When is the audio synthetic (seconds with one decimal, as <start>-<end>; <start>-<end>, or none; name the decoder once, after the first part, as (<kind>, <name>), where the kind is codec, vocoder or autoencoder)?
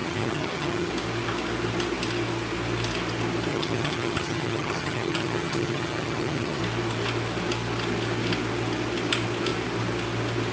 0.0-0.9 (vocoder, HiFi-GAN); 3.5-6.6